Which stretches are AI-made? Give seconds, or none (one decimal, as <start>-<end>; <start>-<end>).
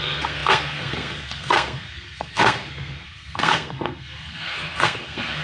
0.0-5.4